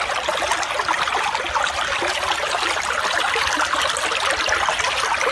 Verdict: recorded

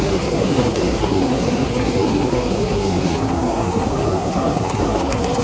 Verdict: remade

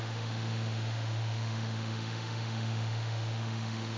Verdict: remade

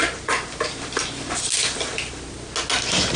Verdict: recorded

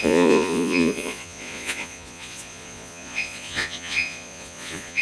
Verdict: remade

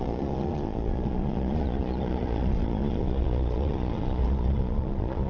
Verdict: remade